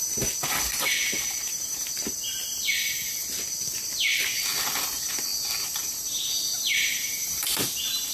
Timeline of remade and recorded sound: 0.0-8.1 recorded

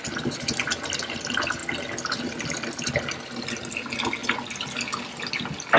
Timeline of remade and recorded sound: 0.0-5.8 recorded

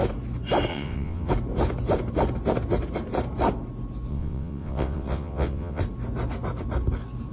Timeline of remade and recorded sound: 0.0-0.7 recorded; 0.7-1.3 remade; 1.3-4.1 recorded; 4.1-5.8 remade; 5.8-7.3 recorded